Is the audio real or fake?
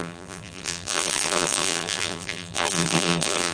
fake